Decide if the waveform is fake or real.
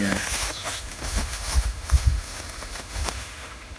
fake